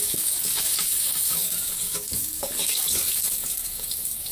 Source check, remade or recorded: remade